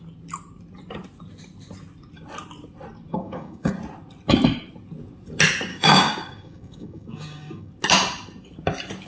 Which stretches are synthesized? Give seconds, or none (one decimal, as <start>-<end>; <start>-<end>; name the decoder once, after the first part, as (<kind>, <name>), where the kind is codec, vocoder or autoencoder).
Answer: 3.1-3.7 (codec, DAC); 5.7-7.7